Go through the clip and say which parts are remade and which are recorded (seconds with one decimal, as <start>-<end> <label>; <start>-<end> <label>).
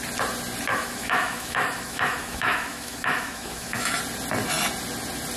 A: 0.0-0.7 recorded; 0.7-3.9 remade; 3.9-5.4 recorded